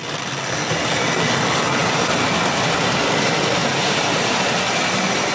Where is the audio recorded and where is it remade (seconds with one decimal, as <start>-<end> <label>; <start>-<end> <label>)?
0.0-3.6 recorded; 3.6-4.2 remade; 4.2-5.3 recorded